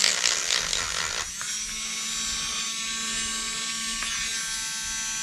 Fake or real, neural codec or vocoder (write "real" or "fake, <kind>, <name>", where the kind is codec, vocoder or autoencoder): real